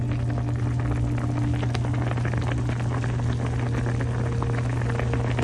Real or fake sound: real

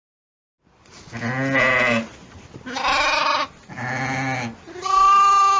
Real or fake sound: real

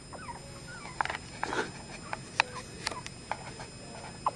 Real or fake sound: real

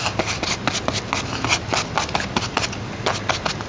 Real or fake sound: real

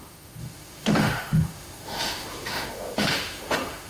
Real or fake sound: fake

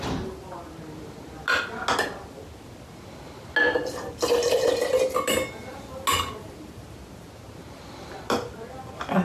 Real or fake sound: real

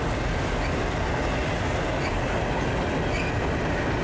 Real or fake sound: real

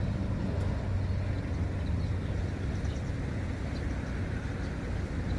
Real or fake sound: real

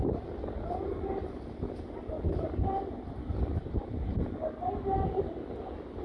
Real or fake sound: real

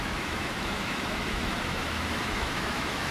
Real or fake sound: fake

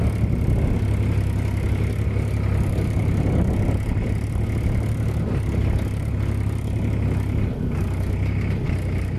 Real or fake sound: real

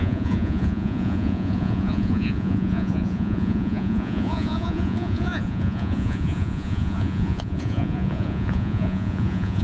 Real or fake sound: fake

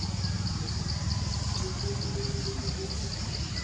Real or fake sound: real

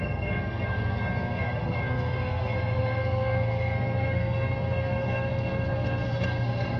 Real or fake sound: fake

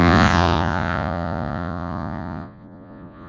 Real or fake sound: fake